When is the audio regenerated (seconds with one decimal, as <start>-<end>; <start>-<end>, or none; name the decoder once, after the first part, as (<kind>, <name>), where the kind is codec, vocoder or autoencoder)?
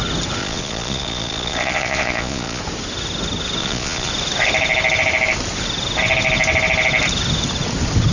0.4-2.6 (vocoder, Vocos); 3.6-4.1